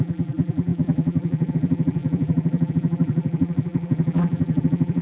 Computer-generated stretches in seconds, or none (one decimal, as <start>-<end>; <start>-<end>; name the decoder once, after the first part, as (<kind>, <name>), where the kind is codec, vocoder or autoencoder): 0.0-5.0 (vocoder, BigVGAN v2)

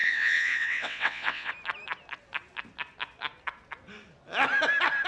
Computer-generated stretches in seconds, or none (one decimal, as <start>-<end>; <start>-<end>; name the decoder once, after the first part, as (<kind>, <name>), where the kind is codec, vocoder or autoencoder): 0.0-1.5 (vocoder, WaveNeXt)